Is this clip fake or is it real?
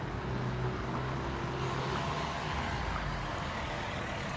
fake